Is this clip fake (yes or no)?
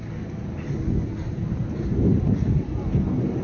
no